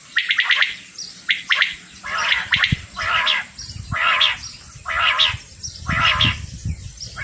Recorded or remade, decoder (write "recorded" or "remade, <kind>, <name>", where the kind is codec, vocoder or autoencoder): recorded